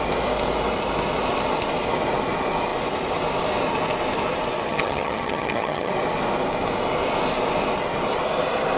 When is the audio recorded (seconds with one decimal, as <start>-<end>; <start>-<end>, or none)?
0.0-4.7; 5.9-8.8